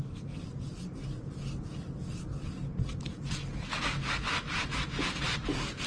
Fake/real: real